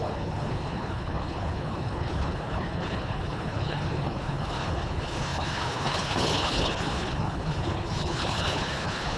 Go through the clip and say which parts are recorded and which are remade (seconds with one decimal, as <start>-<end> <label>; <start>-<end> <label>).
0.0-9.2 remade